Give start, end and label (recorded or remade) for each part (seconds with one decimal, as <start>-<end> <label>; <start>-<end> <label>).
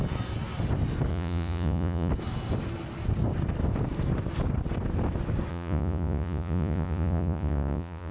0.0-1.1 recorded; 1.1-2.1 remade; 2.1-5.5 recorded; 5.5-8.1 remade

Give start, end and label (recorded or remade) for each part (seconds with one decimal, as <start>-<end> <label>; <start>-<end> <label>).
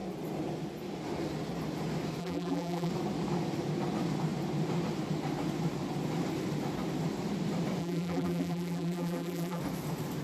0.0-2.2 recorded; 2.2-2.9 remade; 2.9-7.8 recorded; 7.8-9.6 remade; 9.6-10.2 recorded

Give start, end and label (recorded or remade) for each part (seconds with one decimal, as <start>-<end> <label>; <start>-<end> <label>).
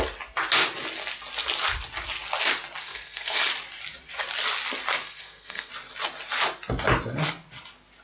0.0-2.8 recorded; 2.8-3.5 remade; 3.5-5.0 recorded; 5.0-5.7 remade; 5.7-8.0 recorded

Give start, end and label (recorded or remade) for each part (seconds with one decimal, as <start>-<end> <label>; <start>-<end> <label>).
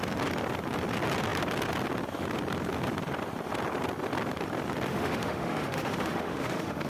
0.0-4.9 recorded; 4.9-6.9 remade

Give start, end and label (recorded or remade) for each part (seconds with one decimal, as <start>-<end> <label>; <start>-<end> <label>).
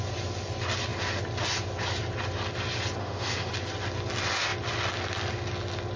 0.0-3.0 recorded; 3.0-3.5 remade; 3.5-6.0 recorded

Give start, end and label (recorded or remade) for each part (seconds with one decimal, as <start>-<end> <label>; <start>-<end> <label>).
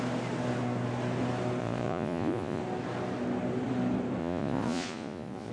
0.0-1.6 recorded; 1.6-2.6 remade; 2.6-4.2 recorded; 4.2-5.5 remade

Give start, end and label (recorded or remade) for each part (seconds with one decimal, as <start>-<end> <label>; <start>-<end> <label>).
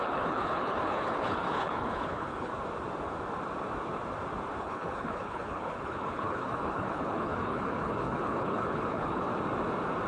0.0-2.5 remade; 2.5-4.6 recorded; 4.6-9.3 remade; 9.3-10.1 recorded